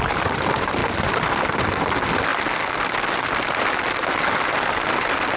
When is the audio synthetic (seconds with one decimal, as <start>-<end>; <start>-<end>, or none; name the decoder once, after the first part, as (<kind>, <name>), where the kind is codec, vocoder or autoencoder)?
none

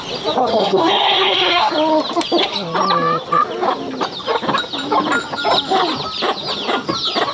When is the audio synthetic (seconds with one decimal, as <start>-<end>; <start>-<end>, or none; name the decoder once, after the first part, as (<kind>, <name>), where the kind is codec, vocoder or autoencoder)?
0.4-1.7 (codec, SNAC)

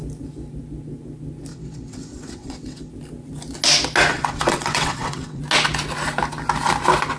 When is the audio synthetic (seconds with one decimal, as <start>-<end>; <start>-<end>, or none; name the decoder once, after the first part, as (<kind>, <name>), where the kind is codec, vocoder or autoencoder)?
1.5-2.9 (vocoder, WaveNeXt); 4.1-5.4

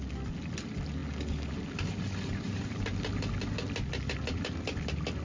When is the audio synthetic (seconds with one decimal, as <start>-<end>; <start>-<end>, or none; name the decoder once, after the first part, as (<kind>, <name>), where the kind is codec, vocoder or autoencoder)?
none

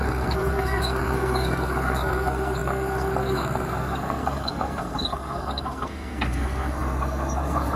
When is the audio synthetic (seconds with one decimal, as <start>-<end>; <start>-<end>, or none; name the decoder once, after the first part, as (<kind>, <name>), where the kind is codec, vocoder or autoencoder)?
0.0-7.8 (codec, SNAC)

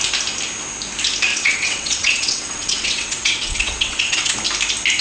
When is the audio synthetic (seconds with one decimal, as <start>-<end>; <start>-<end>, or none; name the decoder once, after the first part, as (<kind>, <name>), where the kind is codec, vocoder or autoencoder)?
1.3-4.3 (vocoder, WaveNeXt)